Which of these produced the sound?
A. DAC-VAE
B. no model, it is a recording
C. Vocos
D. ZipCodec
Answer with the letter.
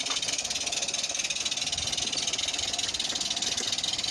B